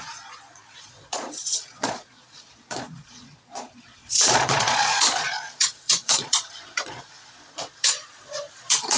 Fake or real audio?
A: fake